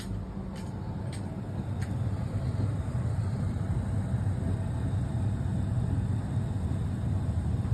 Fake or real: real